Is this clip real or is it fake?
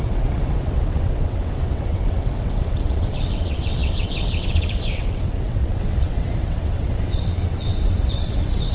fake